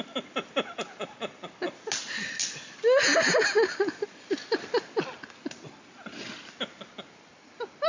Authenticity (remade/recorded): recorded